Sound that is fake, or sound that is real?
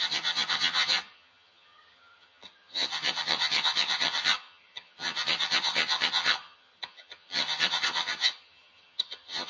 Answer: fake